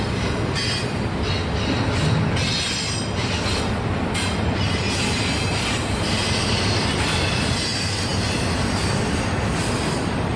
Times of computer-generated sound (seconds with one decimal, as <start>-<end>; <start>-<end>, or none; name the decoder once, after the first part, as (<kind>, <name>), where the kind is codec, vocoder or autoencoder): none